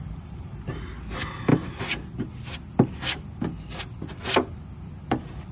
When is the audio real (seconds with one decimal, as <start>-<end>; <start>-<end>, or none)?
0.0-5.5